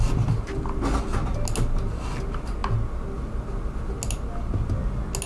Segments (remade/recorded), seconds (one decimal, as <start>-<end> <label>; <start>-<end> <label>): 0.0-5.3 recorded